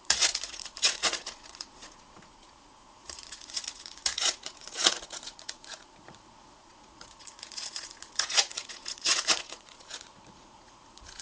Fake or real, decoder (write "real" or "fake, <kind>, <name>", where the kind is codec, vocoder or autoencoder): fake, vocoder, Vocos